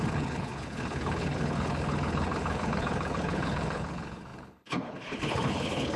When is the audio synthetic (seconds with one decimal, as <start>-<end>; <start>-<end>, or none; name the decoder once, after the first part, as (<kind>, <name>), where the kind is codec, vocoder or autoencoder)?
0.0-6.0 (codec, HILCodec)